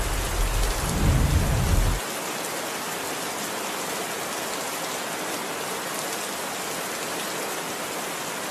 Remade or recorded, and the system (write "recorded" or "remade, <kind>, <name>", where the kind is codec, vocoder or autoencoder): recorded